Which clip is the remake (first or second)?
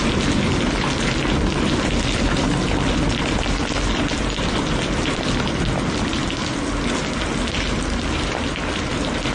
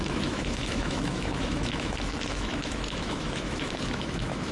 second